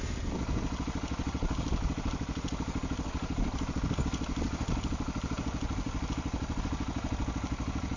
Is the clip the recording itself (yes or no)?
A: yes